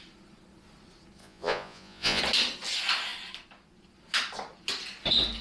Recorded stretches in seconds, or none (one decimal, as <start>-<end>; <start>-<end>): 0.0-1.2; 2.2-5.4